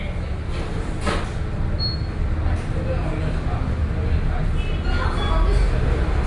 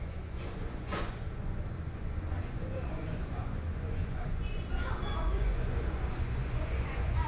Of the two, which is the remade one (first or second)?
second